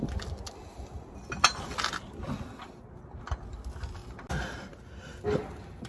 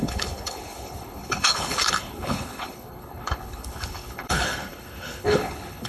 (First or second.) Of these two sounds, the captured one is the first